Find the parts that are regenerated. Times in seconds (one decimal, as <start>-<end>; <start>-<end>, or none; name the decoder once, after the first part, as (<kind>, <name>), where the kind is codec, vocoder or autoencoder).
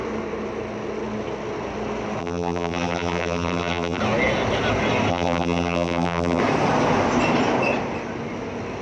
2.2-4.0 (vocoder, BigVGAN v2); 5.1-6.4